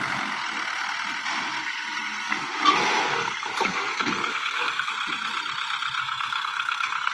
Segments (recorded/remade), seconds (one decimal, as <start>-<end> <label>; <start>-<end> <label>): 0.0-1.6 recorded; 1.6-4.9 remade; 4.9-6.0 recorded; 6.0-7.1 remade